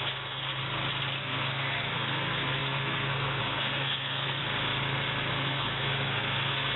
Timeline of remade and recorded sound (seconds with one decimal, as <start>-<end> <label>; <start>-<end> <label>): 0.0-0.6 remade; 0.6-1.2 recorded; 1.2-4.4 remade; 4.4-5.3 recorded; 5.3-6.8 remade